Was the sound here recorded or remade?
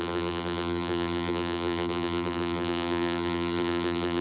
remade